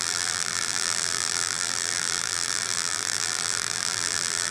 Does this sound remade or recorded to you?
remade